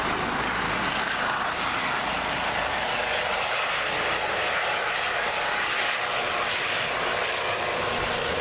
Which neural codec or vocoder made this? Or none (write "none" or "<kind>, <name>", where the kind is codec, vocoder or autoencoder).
none